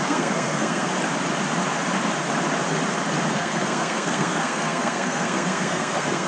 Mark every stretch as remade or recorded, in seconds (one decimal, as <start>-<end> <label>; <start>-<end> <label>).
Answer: 0.0-0.9 remade; 0.9-3.3 recorded; 3.3-6.3 remade